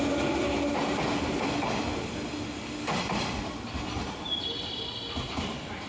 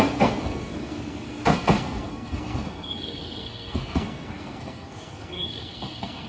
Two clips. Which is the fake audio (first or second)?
second